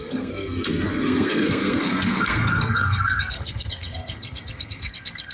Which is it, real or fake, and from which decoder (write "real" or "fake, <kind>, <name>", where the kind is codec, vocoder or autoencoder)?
fake, codec, SNAC